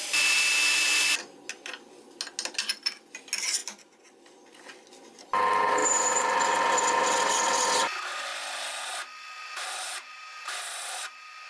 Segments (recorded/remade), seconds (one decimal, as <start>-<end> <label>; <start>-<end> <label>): 0.0-5.8 recorded; 5.8-6.3 remade; 6.3-9.4 recorded; 9.4-11.5 remade